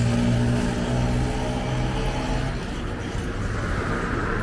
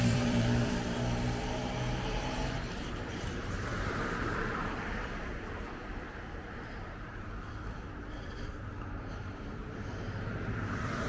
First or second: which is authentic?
first